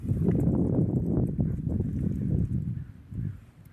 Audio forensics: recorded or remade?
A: remade